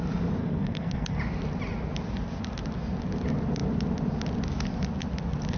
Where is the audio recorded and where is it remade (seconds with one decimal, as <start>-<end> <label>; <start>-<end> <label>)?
0.0-0.4 recorded; 0.4-1.2 remade; 1.2-5.6 recorded